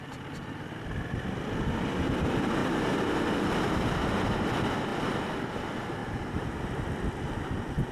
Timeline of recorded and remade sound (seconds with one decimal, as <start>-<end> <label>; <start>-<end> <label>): 0.0-2.6 recorded; 2.6-3.4 remade; 3.4-6.0 recorded; 6.0-6.7 remade; 6.7-7.9 recorded